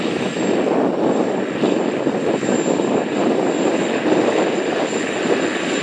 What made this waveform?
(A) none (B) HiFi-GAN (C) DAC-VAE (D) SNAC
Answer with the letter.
A